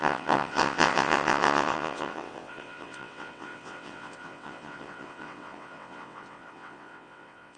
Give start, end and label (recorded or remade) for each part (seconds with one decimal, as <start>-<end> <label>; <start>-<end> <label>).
0.0-7.6 remade